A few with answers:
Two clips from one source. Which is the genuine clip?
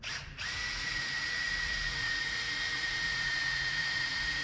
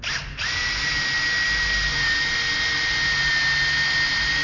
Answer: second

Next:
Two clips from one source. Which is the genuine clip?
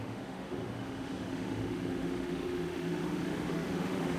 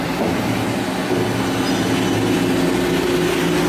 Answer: second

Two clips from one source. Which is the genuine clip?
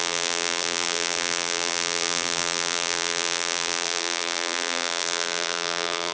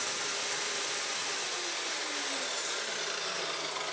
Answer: second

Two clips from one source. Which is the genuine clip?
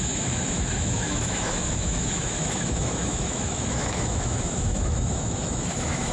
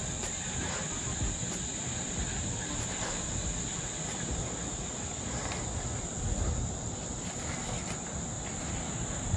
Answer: second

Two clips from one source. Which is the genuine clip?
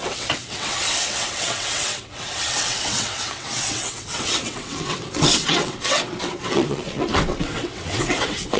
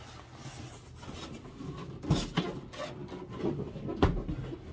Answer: second